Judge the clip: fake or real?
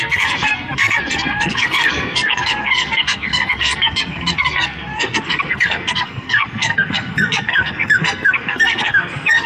fake